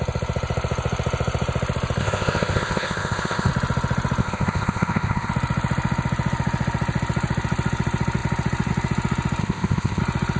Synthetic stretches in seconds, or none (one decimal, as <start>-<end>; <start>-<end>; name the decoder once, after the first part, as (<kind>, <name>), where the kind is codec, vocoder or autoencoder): 2.0-3.5 (codec, ZipCodec); 4.2-5.3; 9.4-10.0